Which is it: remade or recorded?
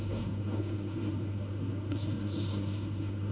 remade